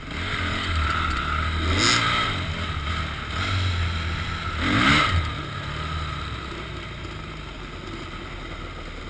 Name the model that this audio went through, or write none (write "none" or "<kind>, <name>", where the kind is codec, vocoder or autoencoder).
none